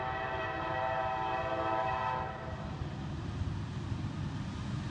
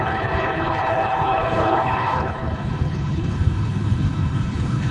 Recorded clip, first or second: first